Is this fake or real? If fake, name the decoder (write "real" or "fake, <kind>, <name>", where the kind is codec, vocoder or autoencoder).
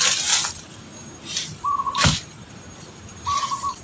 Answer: real